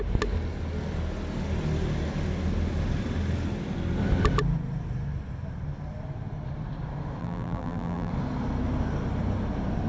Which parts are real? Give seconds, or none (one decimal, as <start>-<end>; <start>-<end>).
0.0-7.2; 8.1-9.9